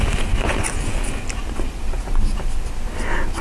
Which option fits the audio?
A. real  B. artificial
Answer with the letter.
A